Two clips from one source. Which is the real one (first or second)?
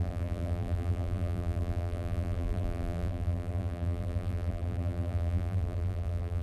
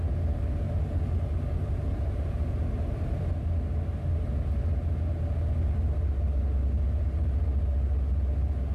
second